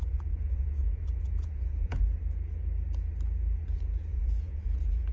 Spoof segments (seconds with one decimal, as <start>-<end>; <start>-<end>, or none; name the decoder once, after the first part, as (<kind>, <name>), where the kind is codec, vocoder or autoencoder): 0.0-2.0 (vocoder, Vocos); 4.1-5.1